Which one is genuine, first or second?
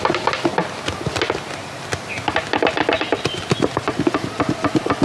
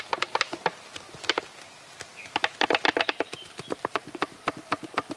first